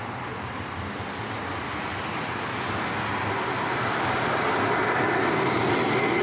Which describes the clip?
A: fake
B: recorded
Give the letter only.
B